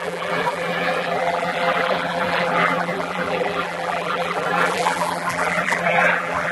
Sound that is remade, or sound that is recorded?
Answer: remade